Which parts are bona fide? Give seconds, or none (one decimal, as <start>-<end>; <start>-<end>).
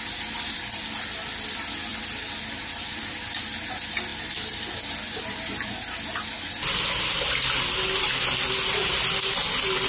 0.0-9.9